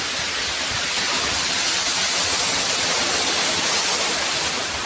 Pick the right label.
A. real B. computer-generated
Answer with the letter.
A